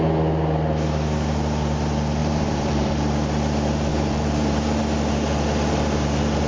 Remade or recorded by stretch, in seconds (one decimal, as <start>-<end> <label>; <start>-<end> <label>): 0.0-2.2 recorded; 2.2-2.9 remade; 2.9-3.9 recorded; 3.9-4.8 remade; 4.8-6.5 recorded